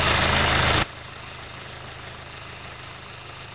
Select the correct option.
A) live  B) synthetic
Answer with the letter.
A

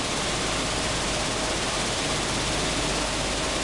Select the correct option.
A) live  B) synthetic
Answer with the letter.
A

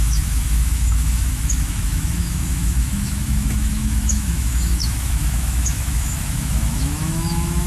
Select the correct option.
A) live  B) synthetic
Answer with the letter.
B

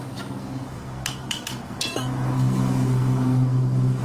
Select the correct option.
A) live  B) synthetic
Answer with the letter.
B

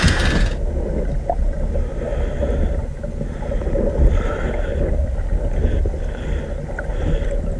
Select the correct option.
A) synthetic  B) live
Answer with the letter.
B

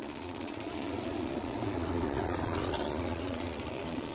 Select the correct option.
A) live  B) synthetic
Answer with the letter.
B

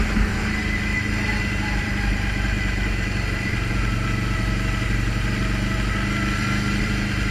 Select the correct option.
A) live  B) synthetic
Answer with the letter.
A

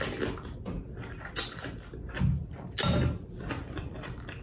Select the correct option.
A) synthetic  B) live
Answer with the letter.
B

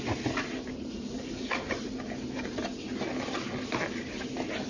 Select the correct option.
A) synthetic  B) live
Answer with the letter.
B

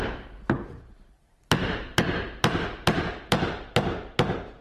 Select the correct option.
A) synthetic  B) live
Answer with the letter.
A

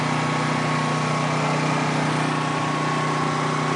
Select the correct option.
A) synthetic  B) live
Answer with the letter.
B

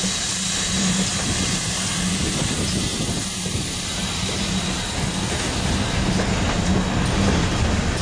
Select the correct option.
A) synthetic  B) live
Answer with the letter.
B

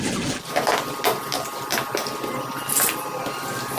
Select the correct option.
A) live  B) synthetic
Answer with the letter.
A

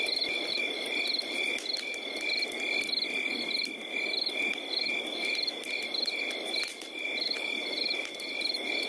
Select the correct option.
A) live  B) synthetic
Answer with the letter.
A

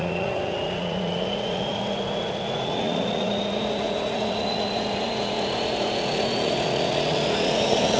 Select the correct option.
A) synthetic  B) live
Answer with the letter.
A